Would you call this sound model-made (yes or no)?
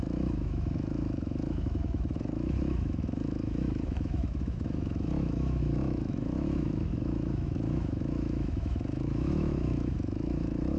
yes